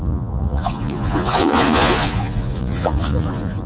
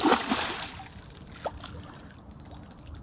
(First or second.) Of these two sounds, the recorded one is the second